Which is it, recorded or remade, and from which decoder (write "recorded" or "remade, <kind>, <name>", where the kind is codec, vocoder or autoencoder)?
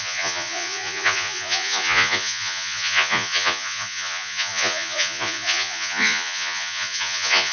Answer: remade, vocoder, Vocos